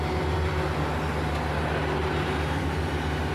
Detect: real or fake real